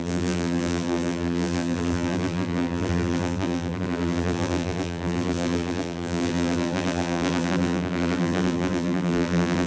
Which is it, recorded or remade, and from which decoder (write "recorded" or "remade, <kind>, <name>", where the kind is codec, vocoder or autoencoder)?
remade, vocoder, BigVGAN v2